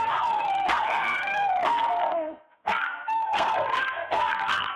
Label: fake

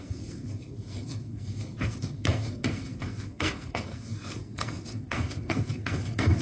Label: fake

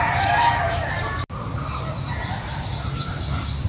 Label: real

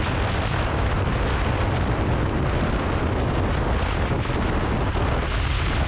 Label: real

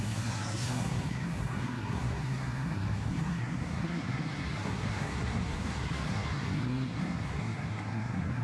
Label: fake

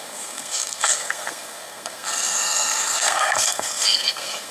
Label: fake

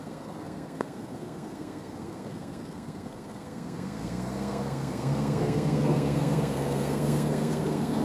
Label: fake